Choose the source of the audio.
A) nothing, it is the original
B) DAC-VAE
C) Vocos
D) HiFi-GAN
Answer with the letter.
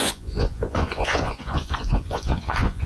C